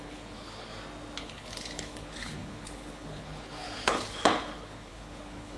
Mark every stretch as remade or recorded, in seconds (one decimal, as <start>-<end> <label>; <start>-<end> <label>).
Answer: 0.0-0.7 remade; 0.7-1.2 recorded; 1.2-5.6 remade